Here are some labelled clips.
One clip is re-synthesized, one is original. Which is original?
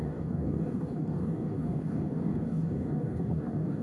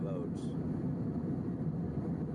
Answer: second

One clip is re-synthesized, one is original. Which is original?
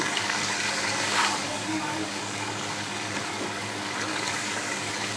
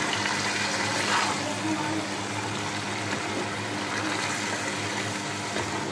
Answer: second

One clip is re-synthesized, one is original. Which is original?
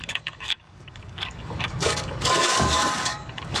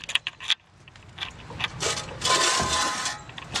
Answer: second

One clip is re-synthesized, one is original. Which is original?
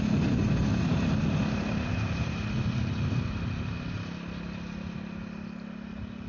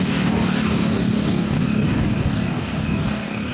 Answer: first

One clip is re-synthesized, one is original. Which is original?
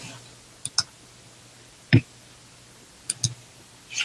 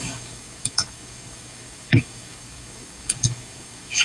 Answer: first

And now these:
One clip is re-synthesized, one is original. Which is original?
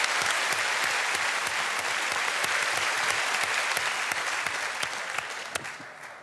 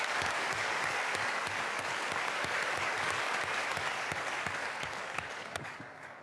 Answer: first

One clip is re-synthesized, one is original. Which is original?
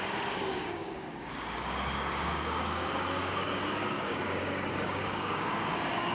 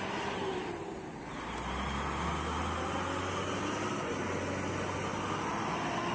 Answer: second